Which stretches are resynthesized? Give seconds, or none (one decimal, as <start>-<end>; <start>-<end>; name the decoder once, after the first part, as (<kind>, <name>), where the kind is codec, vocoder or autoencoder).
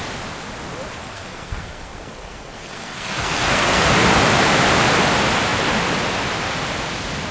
1.0-3.9 (codec, SNAC)